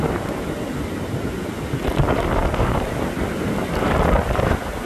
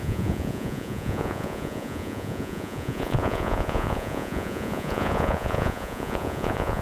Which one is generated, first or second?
second